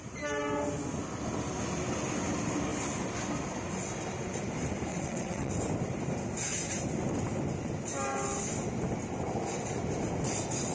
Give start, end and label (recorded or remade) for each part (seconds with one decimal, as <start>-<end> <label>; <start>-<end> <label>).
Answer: 0.0-4.9 recorded; 4.9-5.5 remade; 5.5-10.7 recorded